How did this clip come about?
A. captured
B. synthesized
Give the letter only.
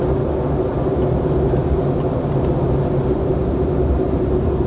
A